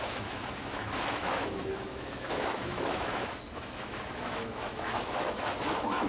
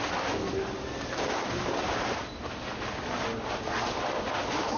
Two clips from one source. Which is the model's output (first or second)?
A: first